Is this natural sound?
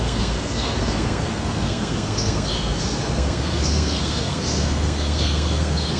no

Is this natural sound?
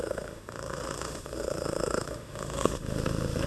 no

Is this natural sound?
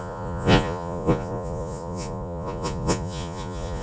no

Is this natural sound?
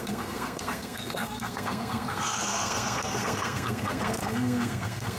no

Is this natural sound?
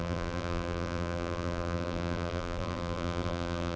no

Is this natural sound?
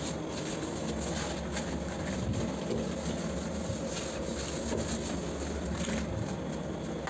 yes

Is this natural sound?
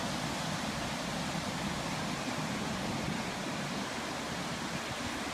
yes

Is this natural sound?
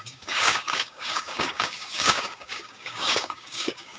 no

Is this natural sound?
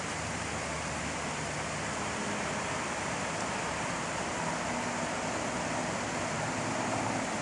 yes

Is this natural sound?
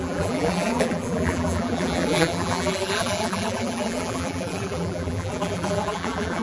no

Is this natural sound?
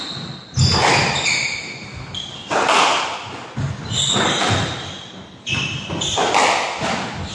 yes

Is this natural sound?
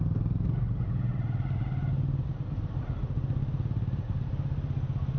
yes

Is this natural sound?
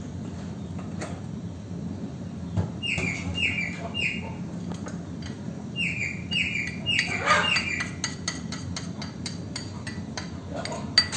yes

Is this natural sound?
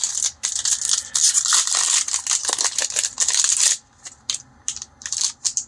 yes